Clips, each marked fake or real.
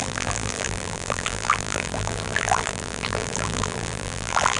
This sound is fake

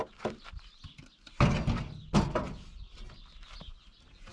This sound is real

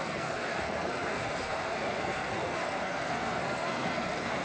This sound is fake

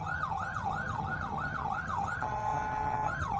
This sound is fake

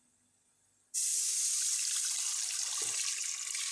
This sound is real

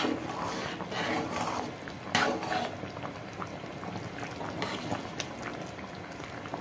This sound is real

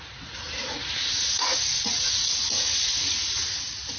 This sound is fake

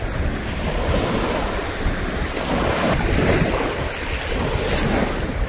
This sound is real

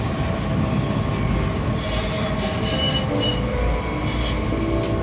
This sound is real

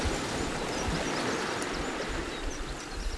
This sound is real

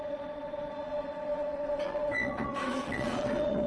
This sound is fake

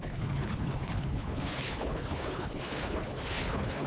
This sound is fake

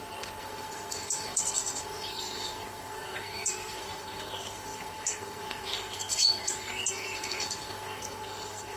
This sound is fake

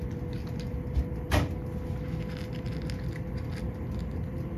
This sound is real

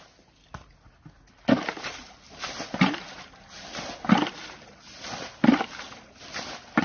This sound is real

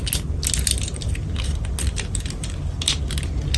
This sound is real